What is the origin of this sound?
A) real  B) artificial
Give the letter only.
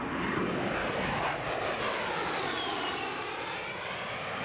A